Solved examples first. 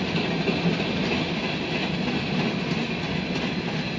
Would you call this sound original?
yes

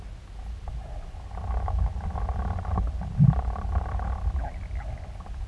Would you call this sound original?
yes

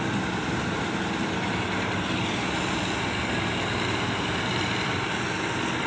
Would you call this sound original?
yes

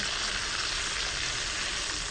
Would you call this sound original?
yes